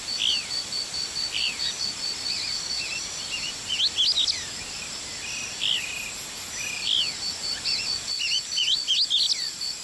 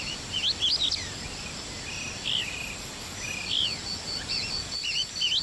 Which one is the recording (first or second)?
first